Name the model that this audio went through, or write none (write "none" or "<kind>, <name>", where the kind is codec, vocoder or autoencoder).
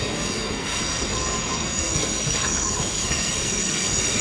codec, SNAC